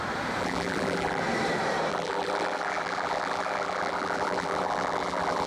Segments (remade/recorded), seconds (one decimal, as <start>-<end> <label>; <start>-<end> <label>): 0.0-0.4 recorded; 0.4-1.2 remade; 1.2-1.9 recorded; 1.9-5.5 remade